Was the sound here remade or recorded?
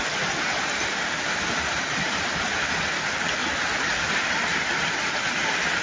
recorded